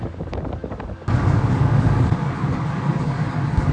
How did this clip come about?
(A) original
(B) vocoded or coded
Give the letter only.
B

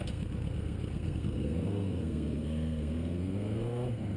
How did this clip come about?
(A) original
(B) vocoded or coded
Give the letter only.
B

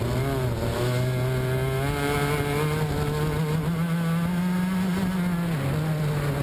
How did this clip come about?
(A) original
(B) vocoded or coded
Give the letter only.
A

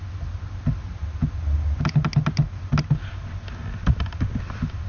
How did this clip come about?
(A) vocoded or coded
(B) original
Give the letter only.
B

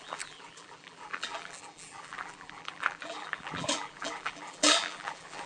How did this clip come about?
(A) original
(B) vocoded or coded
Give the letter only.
B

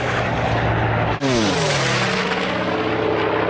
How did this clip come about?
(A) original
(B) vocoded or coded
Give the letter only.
A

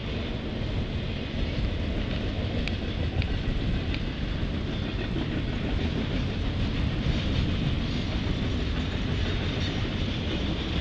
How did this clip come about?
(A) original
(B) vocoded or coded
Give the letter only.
A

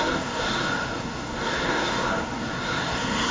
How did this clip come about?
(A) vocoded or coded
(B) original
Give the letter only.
A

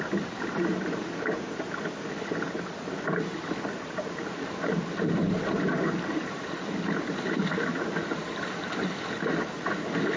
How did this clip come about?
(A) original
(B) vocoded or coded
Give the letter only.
A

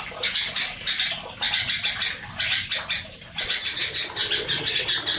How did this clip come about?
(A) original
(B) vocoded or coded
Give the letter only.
A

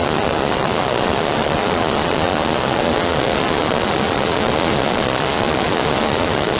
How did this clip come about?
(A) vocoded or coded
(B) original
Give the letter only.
A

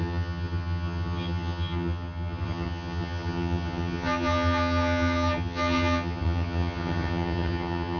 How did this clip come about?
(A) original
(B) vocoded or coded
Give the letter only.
B